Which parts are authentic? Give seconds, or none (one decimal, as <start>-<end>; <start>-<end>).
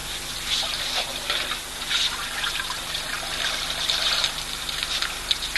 0.0-0.6